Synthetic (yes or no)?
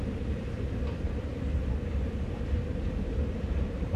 yes